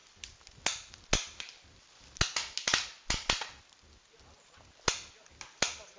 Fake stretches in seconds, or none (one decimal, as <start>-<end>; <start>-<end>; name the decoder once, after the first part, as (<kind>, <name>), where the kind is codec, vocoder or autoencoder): none